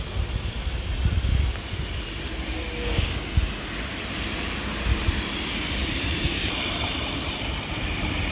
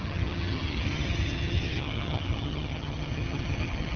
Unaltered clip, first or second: first